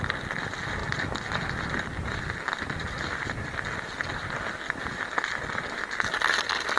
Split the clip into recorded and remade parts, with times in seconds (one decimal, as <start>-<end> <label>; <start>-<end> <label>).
0.0-6.8 recorded